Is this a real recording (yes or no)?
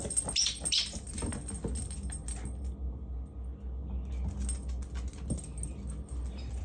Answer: yes